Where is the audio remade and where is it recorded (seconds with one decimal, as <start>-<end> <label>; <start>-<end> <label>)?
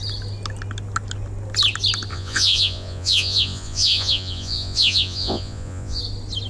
0.0-2.1 recorded; 2.1-6.0 remade; 6.0-6.5 recorded